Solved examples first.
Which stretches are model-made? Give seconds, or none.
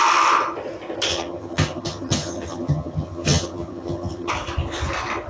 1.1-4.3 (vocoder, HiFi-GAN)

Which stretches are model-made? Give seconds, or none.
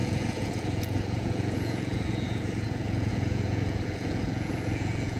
0.0-5.2 (vocoder, Vocos)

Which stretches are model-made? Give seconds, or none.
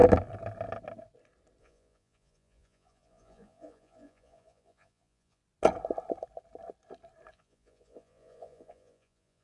1.6-5.4 (vocoder, Vocos); 7.3-9.4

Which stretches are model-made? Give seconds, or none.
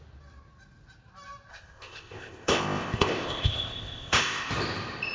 1.5-4.5 (codec, ZipCodec)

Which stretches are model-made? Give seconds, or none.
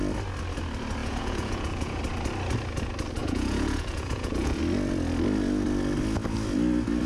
1.0-2.0 (vocoder, Vocos); 3.2-4.6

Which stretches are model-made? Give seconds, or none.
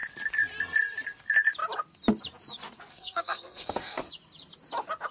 2.9-4.1 (codec, SNAC)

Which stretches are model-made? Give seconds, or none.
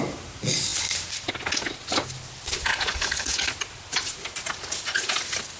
2.7-3.5 (codec, DAC)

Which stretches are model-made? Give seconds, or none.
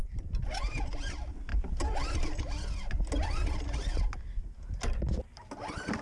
0.0-0.8 (vocoder, BigVGAN v2)